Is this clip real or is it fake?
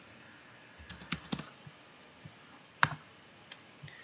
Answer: real